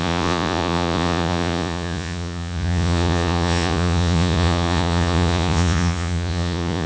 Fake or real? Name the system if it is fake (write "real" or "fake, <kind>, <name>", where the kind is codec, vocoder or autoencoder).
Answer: fake, vocoder, Vocos